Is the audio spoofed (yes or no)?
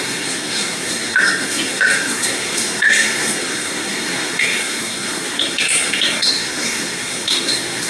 yes